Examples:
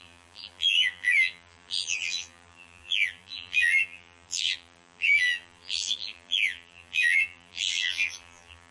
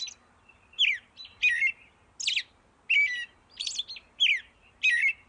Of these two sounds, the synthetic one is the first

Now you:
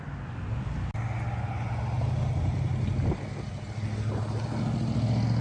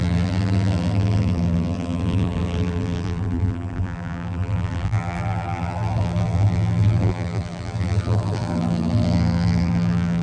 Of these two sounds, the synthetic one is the second